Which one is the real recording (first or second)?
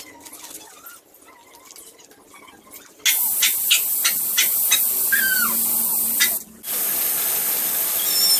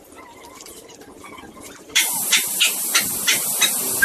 first